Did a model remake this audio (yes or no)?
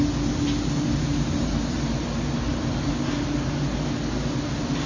no